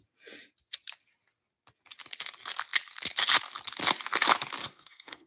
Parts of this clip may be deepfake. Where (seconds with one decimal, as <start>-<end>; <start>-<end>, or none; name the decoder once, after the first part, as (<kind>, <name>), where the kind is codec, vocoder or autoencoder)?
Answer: 4.6-5.3 (codec, SNAC)